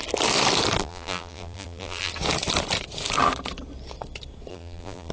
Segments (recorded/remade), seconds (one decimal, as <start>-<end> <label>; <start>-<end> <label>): 0.0-0.8 recorded; 0.8-2.1 remade; 2.1-4.5 recorded; 4.5-5.1 remade